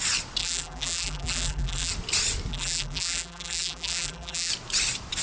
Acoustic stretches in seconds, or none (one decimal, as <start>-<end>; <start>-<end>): 0.0-0.4; 1.9-2.5; 4.5-5.2